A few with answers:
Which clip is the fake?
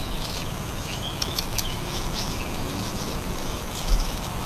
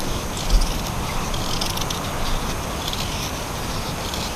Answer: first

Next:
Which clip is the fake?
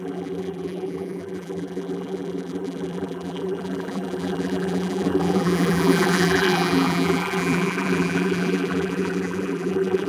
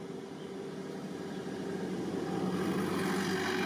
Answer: first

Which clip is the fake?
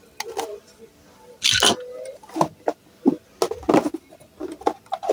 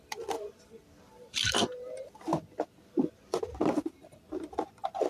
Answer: second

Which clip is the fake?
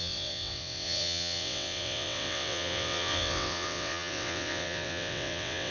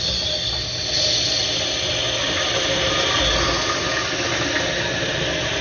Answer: first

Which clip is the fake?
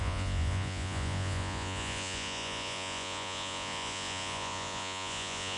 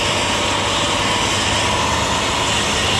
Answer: first